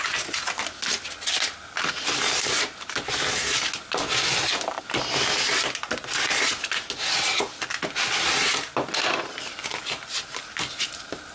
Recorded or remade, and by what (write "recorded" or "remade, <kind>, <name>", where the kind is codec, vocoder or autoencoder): recorded